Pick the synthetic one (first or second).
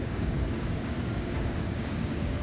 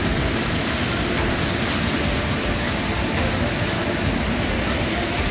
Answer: first